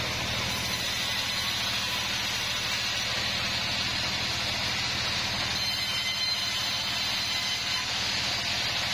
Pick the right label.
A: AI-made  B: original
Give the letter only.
B